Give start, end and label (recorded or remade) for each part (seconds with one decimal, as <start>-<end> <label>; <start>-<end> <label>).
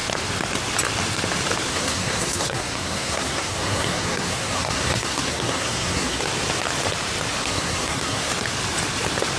0.0-1.7 recorded; 1.7-6.2 remade; 6.2-7.4 recorded; 7.4-8.3 remade; 8.3-9.4 recorded